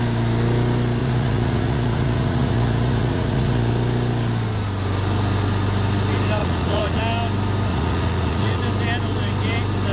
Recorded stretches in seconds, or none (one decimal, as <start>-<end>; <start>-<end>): 0.0-1.0; 3.7-6.4; 7.0-7.7; 8.6-9.9